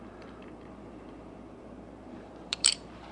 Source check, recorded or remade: remade